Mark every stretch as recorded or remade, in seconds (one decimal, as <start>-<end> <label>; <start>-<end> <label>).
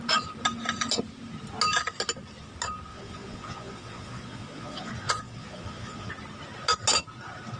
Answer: 0.0-2.9 recorded; 2.9-6.1 remade; 6.1-7.6 recorded